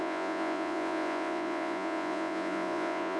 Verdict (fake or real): fake